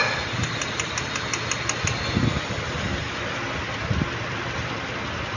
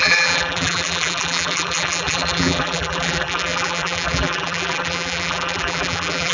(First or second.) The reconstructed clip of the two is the second